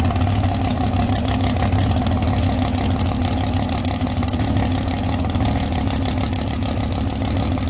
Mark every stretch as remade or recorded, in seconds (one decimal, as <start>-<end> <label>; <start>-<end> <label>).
0.0-0.7 recorded; 0.7-2.0 remade; 2.0-3.2 recorded; 3.2-7.1 remade; 7.1-7.7 recorded

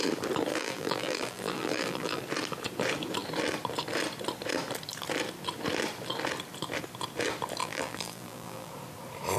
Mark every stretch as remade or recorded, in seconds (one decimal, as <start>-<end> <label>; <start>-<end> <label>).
0.0-0.5 recorded; 0.5-2.2 remade; 2.2-7.6 recorded; 7.6-8.7 remade; 8.7-9.4 recorded

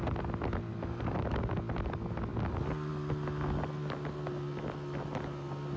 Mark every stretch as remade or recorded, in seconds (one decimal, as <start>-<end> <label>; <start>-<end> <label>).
0.0-0.7 recorded; 0.7-1.6 remade; 1.6-5.8 recorded

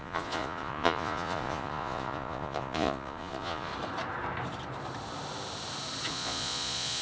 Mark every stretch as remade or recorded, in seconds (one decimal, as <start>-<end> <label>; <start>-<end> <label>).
0.0-3.7 remade; 3.7-6.1 recorded; 6.1-7.0 remade

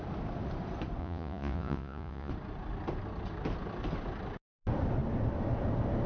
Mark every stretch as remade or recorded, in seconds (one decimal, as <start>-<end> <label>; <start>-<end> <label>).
0.0-1.0 recorded; 1.0-2.3 remade; 2.3-6.1 recorded

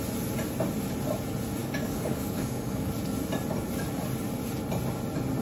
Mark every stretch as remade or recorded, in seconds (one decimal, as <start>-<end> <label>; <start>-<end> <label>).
0.0-1.6 recorded; 1.6-2.9 remade; 2.9-5.4 recorded